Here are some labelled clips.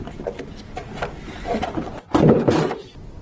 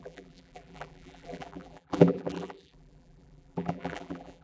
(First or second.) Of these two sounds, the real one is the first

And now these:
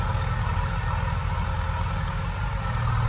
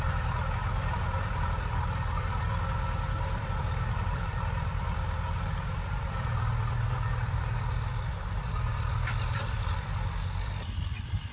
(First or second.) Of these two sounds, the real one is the first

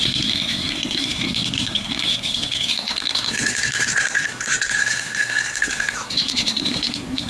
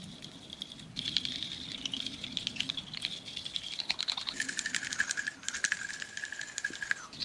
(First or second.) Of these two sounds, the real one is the second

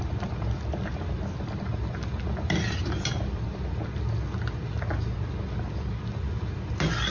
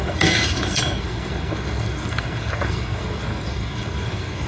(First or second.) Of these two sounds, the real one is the first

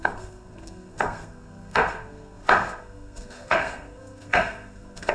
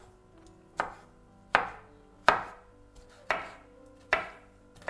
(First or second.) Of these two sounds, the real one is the second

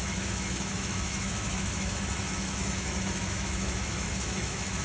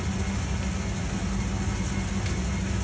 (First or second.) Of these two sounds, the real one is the second